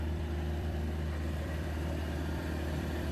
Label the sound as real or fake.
fake